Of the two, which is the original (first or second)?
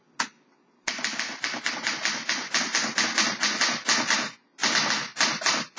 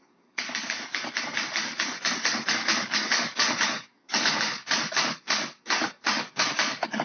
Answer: first